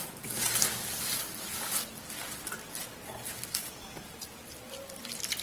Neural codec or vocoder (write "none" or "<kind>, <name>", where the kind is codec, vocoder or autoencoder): none